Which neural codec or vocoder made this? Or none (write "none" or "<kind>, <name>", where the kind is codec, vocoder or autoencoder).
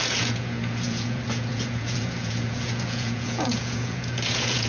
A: vocoder, Vocos